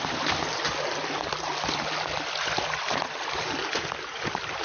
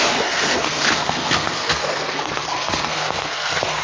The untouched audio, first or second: first